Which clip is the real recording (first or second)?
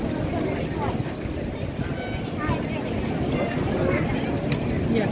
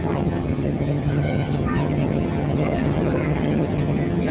first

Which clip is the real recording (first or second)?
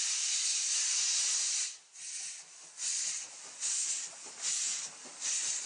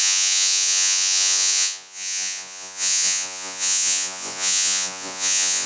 first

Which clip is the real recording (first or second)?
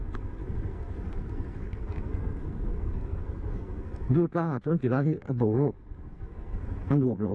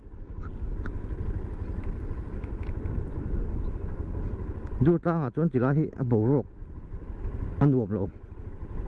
second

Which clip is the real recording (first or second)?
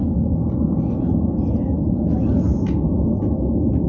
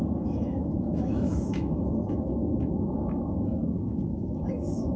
first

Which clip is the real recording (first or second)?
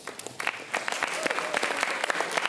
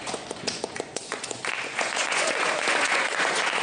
first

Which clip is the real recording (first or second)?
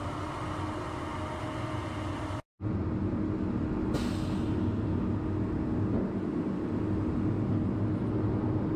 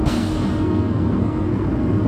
first